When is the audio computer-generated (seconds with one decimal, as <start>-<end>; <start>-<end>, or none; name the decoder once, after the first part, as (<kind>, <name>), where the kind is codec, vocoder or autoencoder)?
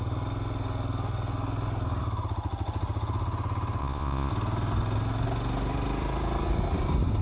3.8-4.3 (vocoder, Vocos)